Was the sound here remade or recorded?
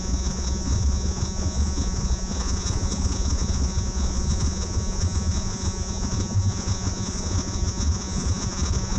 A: remade